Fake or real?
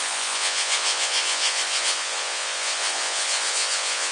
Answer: fake